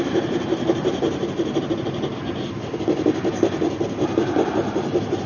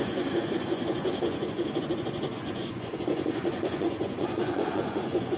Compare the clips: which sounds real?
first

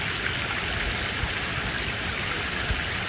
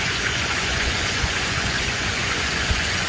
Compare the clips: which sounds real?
first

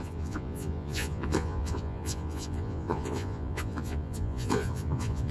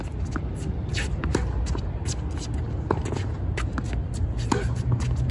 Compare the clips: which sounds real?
second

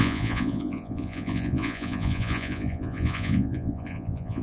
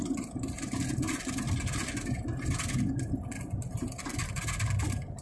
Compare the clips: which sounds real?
second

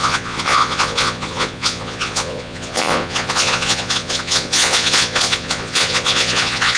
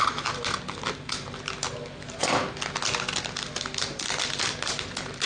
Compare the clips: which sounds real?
second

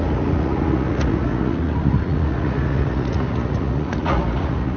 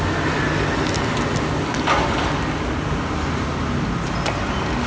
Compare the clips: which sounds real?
second